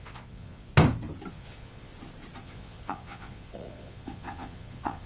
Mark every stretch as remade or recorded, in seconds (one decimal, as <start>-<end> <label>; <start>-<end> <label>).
0.0-0.7 remade; 0.7-1.3 recorded; 1.3-1.9 remade; 1.9-2.4 recorded; 2.4-5.1 remade